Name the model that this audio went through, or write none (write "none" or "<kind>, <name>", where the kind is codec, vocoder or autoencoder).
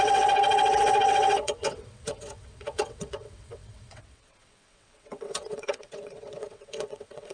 vocoder, WaveNeXt